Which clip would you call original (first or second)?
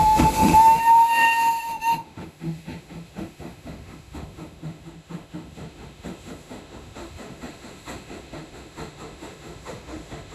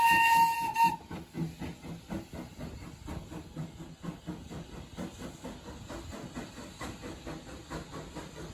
second